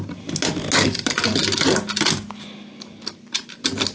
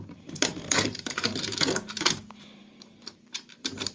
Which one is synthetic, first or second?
second